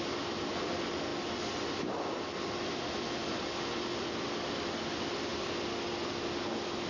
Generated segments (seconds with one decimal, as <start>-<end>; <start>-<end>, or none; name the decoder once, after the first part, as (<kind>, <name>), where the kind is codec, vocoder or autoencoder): none